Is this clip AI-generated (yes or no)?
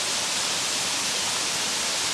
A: no